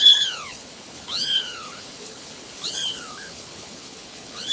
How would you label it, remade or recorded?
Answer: remade